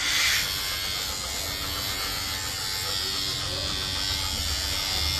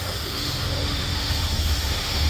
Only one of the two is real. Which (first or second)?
first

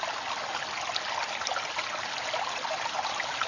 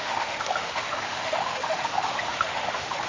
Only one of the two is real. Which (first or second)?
first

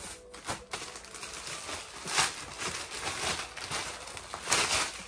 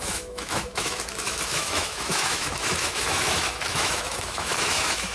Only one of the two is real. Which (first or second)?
first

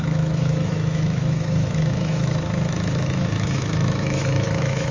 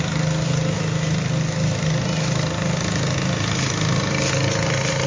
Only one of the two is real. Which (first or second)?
second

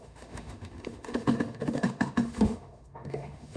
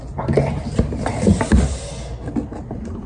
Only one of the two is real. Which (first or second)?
second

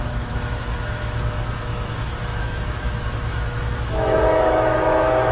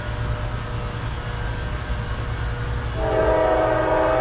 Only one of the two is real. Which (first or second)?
second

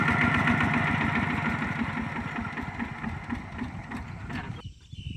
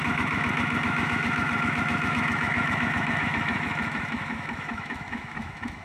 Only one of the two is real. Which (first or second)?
first